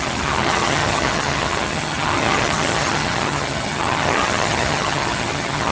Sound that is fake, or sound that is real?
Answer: fake